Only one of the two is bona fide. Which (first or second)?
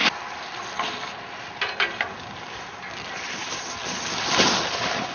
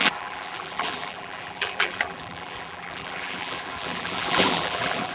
first